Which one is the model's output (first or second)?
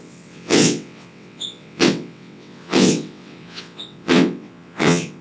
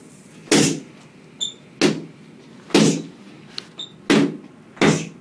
first